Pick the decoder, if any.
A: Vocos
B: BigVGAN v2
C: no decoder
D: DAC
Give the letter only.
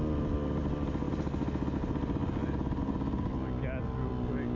C